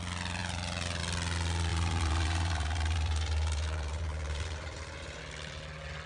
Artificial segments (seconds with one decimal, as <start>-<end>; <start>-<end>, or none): 0.4-1.0; 1.7-5.2